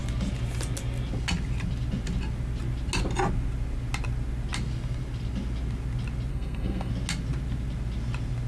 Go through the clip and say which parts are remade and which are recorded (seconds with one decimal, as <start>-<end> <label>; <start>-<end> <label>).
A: 0.0-6.3 recorded; 6.3-6.9 remade; 6.9-8.5 recorded